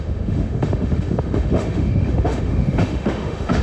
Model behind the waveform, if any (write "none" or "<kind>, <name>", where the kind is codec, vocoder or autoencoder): autoencoder, DAC-VAE